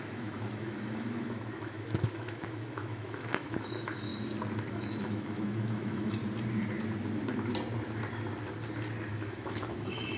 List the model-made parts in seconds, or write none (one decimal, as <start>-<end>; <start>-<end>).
0.0-4.1; 4.7-6.2; 9.1-10.2